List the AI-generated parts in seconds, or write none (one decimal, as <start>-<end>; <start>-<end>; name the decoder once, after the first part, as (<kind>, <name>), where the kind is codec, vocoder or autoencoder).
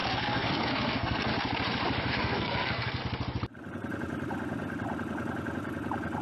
0.0-1.3 (codec, SNAC); 2.1-3.0